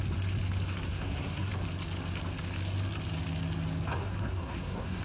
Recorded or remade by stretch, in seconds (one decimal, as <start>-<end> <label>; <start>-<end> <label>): 0.0-0.9 recorded; 0.9-1.5 remade; 1.5-4.0 recorded; 4.0-5.0 remade